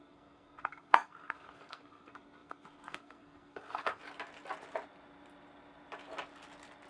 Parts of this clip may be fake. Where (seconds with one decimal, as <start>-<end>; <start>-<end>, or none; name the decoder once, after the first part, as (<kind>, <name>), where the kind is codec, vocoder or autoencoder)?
0.0-4.0 (codec, SNAC)